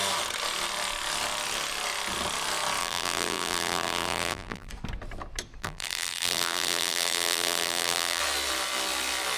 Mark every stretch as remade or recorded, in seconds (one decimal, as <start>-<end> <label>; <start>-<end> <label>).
0.0-2.8 recorded; 2.8-4.7 remade; 4.7-5.6 recorded; 5.6-8.2 remade; 8.2-9.4 recorded